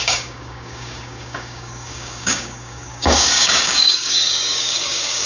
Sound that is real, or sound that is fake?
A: fake